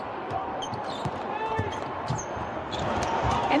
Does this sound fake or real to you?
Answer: fake